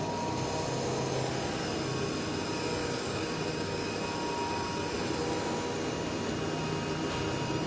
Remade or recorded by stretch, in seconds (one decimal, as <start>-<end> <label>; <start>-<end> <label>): 0.0-2.8 recorded; 2.8-3.9 remade; 3.9-7.7 recorded